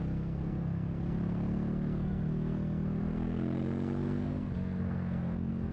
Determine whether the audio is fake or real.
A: fake